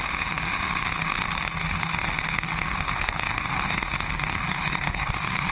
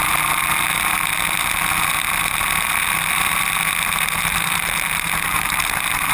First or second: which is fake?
first